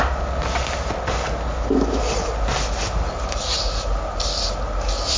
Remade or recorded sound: recorded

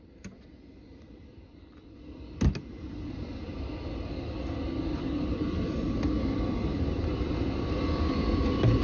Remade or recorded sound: recorded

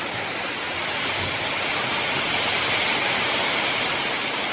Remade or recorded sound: recorded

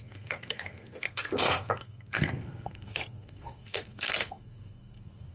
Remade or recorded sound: remade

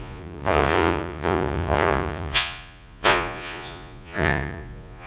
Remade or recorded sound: remade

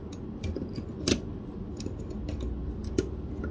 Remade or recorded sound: recorded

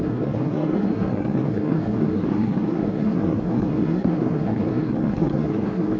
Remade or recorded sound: remade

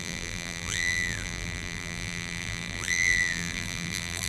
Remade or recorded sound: remade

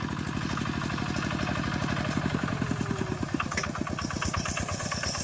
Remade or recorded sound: recorded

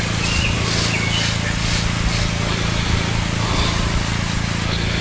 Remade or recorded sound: recorded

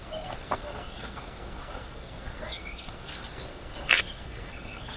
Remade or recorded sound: remade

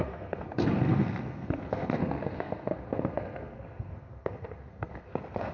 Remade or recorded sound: remade